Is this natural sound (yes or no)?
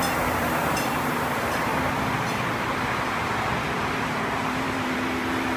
no